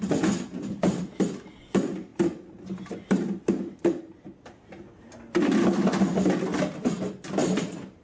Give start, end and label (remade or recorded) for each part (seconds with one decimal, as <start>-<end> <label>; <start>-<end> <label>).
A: 0.0-7.4 recorded; 7.4-8.0 remade